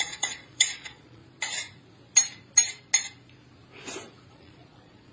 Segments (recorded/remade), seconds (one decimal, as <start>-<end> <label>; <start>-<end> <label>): 0.0-1.2 remade; 1.2-4.3 recorded; 4.3-5.1 remade